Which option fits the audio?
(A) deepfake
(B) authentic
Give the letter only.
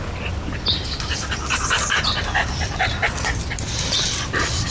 B